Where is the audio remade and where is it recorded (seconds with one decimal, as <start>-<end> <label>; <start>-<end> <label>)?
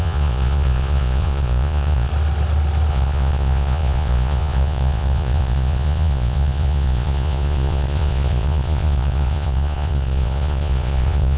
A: 0.0-2.1 remade; 2.1-2.9 recorded; 2.9-11.4 remade